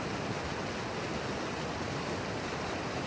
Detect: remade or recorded recorded